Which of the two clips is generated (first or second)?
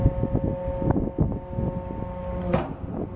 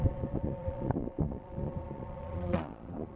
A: second